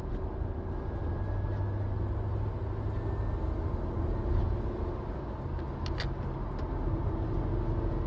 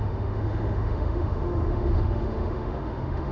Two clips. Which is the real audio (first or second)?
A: first